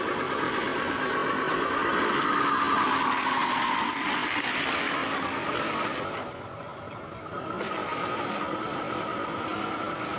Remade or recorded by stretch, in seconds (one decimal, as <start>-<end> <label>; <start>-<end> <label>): 0.0-10.2 recorded

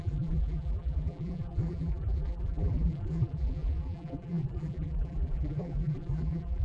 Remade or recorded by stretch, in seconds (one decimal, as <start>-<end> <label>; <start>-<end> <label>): 0.0-6.6 remade

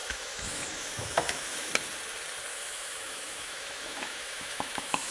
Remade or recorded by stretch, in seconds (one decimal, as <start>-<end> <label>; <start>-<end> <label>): 0.0-1.7 remade; 1.7-2.5 recorded; 2.5-5.1 remade

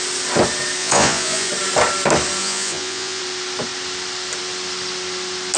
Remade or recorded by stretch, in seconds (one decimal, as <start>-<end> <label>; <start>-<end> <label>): 0.0-0.8 recorded; 0.8-1.5 remade; 1.5-2.4 recorded; 2.4-3.2 remade; 3.2-5.6 recorded

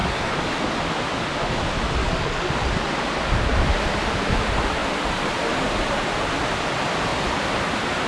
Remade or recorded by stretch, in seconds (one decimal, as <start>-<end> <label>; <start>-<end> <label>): 0.0-0.6 remade; 0.6-2.0 recorded; 2.0-2.6 remade; 2.6-8.1 recorded

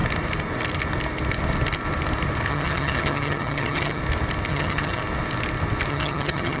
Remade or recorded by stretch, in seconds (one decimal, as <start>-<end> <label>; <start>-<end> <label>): 0.0-2.5 recorded; 2.5-4.0 remade; 4.0-4.5 recorded; 4.5-5.0 remade; 5.0-5.9 recorded; 5.9-6.6 remade

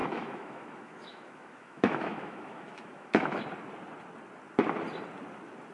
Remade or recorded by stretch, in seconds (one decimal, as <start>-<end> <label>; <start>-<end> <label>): 0.0-3.4 remade; 3.4-5.7 recorded

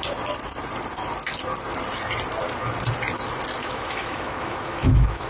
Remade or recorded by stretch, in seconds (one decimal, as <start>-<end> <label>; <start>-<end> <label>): 0.0-3.6 recorded; 3.6-5.3 remade